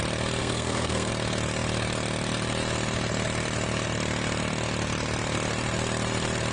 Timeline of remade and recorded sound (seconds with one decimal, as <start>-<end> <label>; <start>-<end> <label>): 0.0-0.4 recorded; 0.4-1.1 remade; 1.1-6.5 recorded